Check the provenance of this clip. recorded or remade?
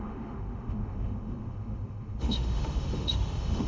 remade